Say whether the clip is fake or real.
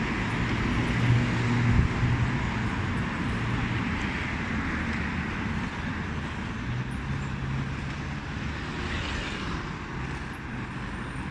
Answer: real